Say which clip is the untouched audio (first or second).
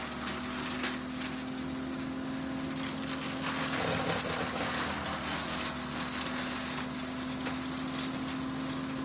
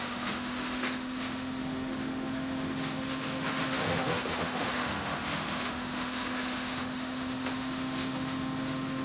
first